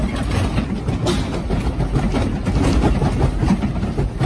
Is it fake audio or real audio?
real